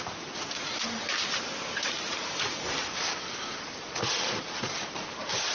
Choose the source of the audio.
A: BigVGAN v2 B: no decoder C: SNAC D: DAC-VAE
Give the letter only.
A